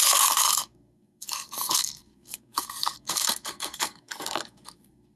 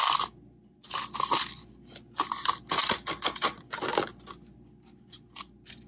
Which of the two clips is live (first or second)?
second